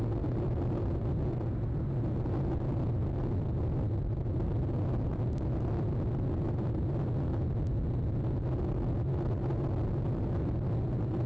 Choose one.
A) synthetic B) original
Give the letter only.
B